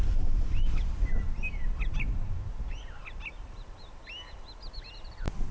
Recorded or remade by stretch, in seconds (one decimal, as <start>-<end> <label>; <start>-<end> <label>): 0.0-5.5 recorded